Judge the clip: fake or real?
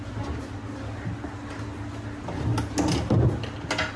real